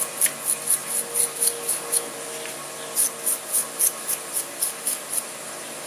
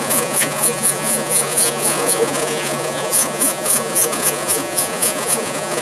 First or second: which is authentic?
first